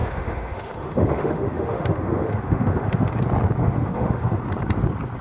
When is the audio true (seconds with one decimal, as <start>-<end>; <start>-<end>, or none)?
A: 3.1-3.6; 4.4-5.2